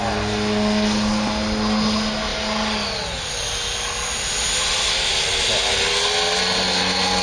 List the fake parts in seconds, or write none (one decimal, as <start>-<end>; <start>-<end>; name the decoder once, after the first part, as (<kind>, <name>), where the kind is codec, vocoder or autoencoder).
none

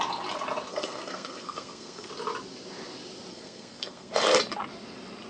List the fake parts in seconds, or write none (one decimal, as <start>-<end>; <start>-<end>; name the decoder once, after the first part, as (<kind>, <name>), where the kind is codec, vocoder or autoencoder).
0.7-2.1 (codec, SNAC); 3.3-4.1

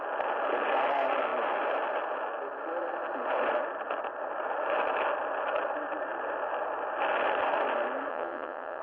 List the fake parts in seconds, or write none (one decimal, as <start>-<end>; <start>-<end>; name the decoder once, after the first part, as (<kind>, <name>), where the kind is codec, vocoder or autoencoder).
8.1-8.8 (vocoder, WaveNeXt)

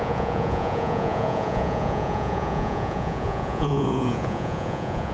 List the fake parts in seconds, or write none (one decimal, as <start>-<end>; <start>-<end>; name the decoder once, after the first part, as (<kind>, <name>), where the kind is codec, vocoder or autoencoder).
0.0-5.1 (vocoder, Vocos)

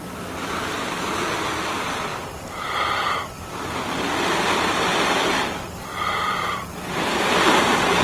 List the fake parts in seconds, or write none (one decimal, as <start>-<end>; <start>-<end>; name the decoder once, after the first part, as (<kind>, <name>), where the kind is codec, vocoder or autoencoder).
2.1-3.1 (vocoder, BigVGAN v2); 5.9-7.2